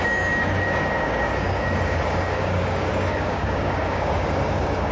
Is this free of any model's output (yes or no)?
no